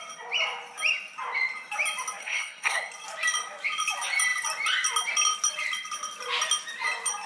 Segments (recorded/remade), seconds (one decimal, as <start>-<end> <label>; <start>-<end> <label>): 0.0-2.2 recorded; 2.2-2.9 remade; 2.9-7.3 recorded